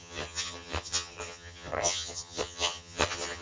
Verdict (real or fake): fake